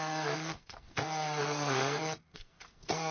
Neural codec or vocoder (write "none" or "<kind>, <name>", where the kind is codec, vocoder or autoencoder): codec, SNAC